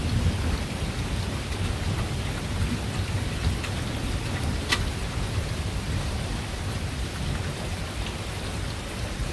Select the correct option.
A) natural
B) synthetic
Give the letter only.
A